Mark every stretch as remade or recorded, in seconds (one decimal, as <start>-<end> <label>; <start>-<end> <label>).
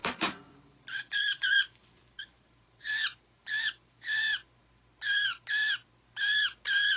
0.0-3.6 remade; 3.6-7.0 recorded